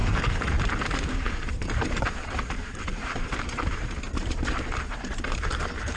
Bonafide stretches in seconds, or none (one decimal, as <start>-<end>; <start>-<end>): none